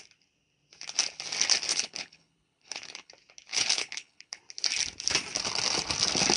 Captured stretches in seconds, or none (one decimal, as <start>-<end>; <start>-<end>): 0.0-1.7; 3.1-3.5; 4.4-6.4